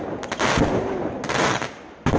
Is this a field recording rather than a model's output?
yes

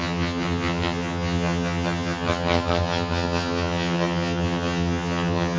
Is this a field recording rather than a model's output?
no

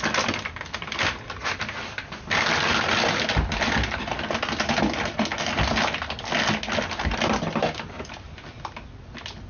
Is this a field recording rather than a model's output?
yes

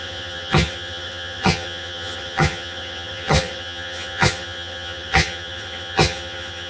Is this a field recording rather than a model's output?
no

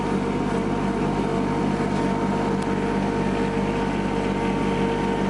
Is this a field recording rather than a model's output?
yes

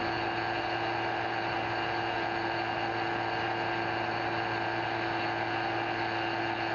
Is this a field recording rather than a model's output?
yes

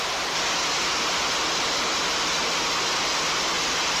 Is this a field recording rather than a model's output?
yes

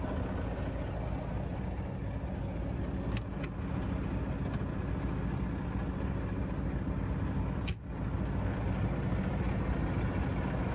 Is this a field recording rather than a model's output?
yes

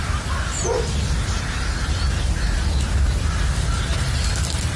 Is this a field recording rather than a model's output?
yes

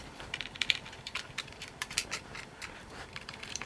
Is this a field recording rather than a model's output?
no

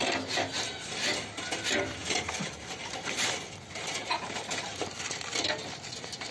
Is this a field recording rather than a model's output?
yes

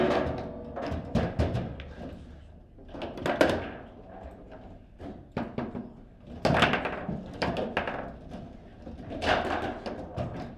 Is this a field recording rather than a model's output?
yes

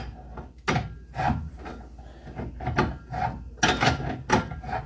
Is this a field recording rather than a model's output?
yes